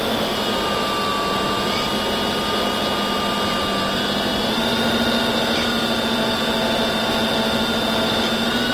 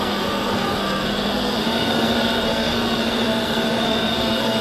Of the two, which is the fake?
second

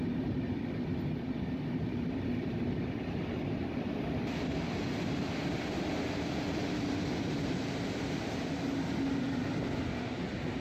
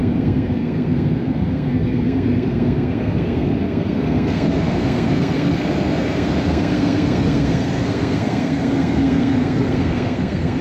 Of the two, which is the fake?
second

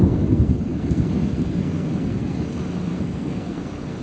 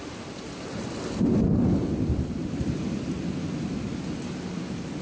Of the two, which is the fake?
first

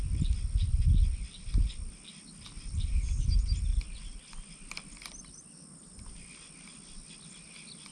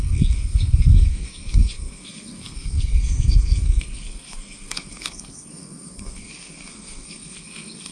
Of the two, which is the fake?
second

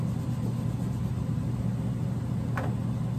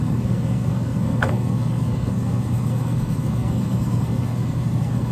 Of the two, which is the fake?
second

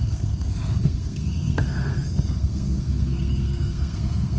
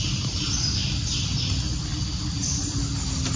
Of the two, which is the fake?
first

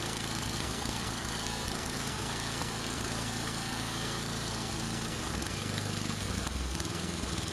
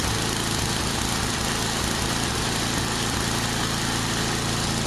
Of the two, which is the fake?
first